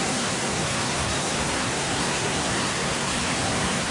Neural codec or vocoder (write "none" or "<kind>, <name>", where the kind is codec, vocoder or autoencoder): codec, SNAC